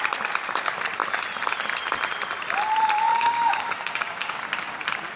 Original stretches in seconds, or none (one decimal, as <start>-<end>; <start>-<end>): 0.0-3.1; 4.3-5.2